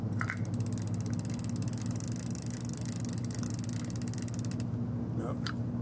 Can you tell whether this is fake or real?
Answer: real